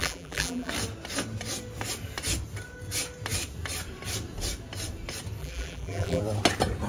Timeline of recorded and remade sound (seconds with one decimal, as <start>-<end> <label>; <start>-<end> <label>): 0.0-0.7 remade; 0.7-5.4 recorded; 5.4-6.2 remade; 6.2-6.9 recorded